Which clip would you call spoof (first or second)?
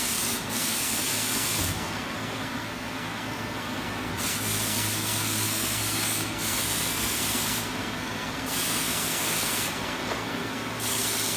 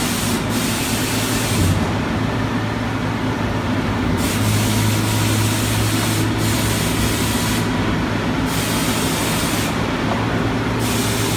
first